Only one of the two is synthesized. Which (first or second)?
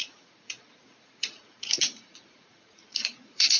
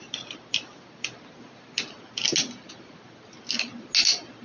first